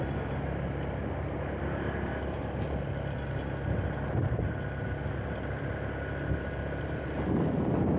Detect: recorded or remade recorded